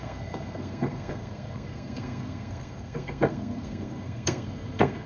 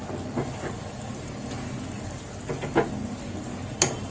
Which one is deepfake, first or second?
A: first